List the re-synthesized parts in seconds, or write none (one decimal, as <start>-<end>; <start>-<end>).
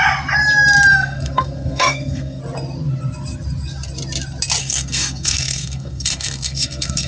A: 0.9-2.4; 4.6-7.1